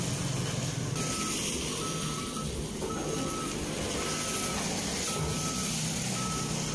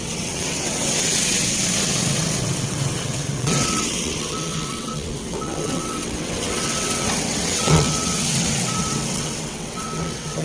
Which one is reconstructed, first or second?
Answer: second